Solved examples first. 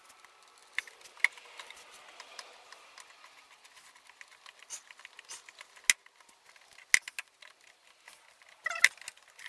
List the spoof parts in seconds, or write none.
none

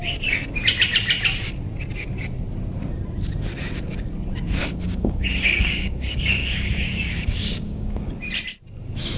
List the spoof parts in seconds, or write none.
4.6-8.1 (codec, DAC)

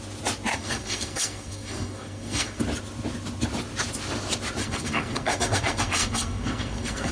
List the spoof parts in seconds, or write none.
0.5-2.6 (codec, SNAC); 4.6-7.1

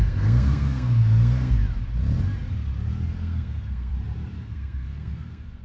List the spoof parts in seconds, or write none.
0.0-1.6 (codec, SNAC); 3.1-3.9; 4.4-5.6

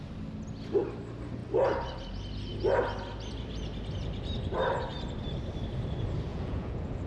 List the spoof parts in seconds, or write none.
6.3-7.1 (vocoder, Vocos)

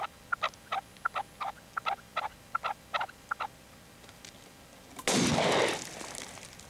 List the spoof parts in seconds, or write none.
none